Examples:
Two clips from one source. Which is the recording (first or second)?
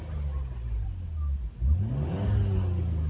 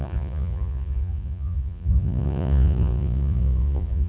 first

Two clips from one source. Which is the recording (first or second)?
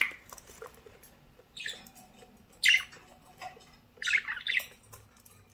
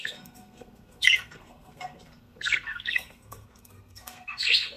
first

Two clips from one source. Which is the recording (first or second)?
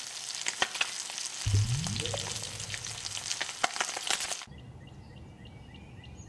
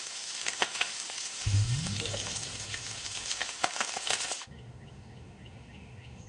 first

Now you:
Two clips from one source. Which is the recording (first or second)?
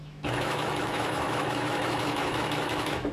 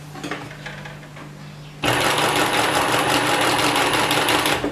second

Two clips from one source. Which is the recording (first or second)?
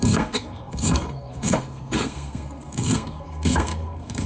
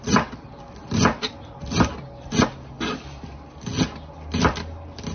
second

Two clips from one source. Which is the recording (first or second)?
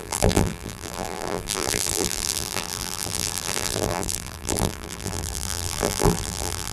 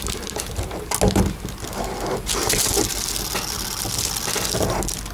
second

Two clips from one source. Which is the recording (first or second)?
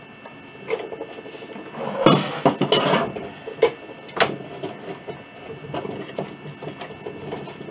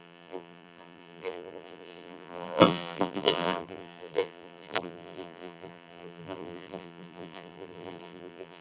first